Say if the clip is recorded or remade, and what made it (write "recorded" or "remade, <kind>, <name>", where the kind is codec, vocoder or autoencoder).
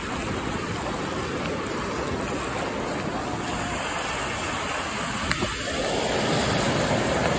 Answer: recorded